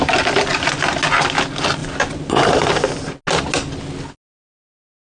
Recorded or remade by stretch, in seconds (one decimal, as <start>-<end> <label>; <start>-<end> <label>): 0.0-5.0 recorded